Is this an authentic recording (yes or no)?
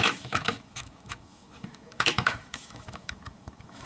no